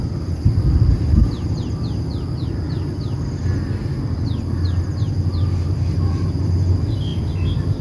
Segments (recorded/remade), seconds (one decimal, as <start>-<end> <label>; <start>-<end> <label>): 0.0-1.2 remade; 1.2-5.6 recorded; 5.6-7.1 remade; 7.1-7.8 recorded